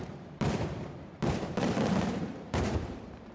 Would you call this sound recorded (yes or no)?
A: no